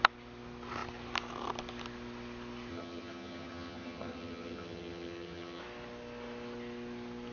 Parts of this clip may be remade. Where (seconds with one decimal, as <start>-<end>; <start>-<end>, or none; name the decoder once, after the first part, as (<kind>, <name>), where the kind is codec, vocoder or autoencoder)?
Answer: 2.7-5.6 (vocoder, HiFi-GAN)